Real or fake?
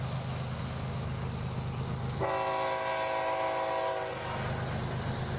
real